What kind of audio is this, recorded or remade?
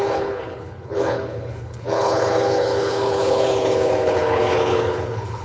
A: remade